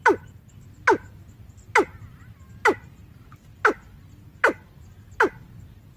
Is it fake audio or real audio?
real